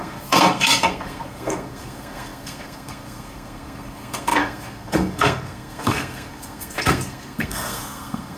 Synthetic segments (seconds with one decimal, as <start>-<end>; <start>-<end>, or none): 0.0-8.4